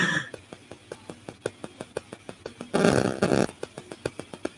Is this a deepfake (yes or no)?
no